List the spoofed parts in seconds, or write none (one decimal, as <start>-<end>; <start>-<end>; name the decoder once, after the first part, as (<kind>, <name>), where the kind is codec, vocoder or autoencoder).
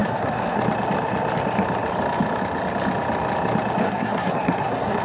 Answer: 0.0-0.6 (codec, SNAC); 3.8-5.0